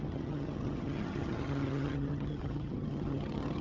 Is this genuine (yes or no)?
no